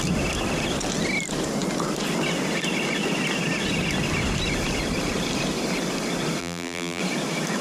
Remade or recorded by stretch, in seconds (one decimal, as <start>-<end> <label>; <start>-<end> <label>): 0.0-6.4 recorded; 6.4-7.0 remade; 7.0-7.6 recorded